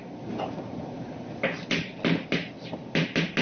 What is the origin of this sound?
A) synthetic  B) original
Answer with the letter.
B